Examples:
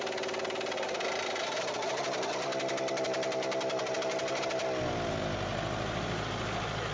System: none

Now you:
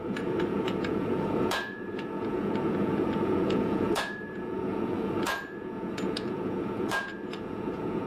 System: vocoder, Vocos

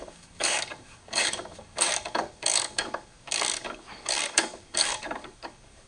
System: codec, DAC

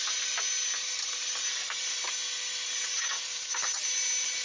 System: none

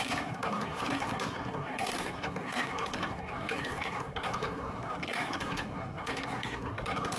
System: codec, SNAC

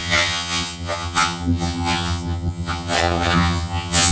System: vocoder, HiFi-GAN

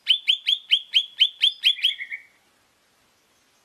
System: none